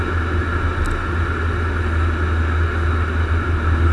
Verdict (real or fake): real